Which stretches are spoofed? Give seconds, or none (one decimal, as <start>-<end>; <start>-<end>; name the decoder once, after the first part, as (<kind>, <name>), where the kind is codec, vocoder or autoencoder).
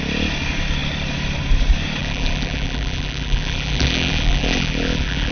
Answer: 2.0-5.3 (vocoder, BigVGAN v2)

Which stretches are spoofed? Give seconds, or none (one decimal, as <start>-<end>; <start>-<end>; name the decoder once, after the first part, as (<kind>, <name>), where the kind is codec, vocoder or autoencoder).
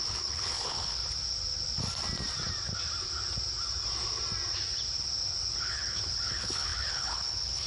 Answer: 0.0-1.0 (codec, HILCodec); 5.6-7.7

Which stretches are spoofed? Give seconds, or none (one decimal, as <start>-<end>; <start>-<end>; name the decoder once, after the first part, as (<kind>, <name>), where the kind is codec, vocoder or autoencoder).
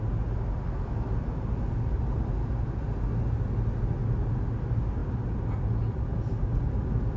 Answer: none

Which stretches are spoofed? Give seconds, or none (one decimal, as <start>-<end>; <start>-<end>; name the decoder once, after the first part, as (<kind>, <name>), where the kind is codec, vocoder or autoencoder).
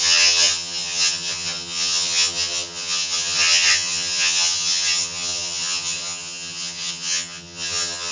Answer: 0.0-8.1 (vocoder, HiFi-GAN)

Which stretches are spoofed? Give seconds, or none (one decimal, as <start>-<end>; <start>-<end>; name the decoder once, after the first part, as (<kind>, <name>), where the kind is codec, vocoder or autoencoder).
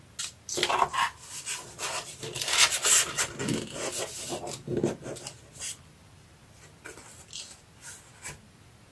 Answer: none